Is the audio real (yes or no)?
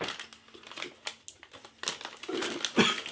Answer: yes